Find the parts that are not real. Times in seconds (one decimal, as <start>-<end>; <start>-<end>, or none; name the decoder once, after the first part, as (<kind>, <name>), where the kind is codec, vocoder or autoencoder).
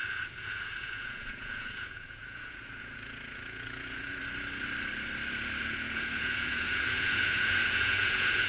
0.0-4.2 (vocoder, Vocos); 5.6-8.5